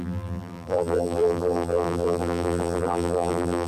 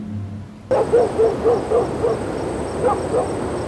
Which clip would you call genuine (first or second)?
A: second